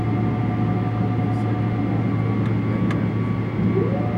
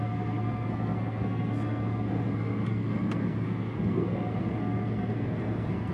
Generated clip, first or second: second